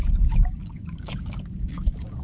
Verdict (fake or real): fake